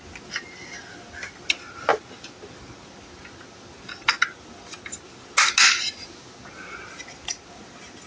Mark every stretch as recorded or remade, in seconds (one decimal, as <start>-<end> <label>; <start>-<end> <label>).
0.0-8.1 recorded